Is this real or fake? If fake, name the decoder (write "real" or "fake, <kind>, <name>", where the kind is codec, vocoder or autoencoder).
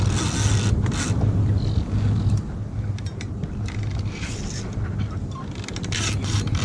real